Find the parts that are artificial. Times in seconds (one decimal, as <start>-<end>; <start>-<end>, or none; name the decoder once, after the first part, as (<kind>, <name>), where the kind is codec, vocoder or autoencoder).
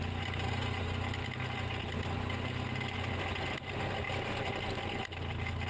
none